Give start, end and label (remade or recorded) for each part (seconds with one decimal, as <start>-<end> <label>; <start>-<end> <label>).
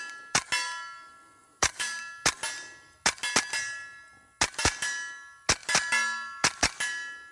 0.0-1.4 recorded; 1.4-2.0 remade; 2.0-7.3 recorded